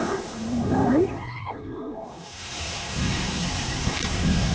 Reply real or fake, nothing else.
fake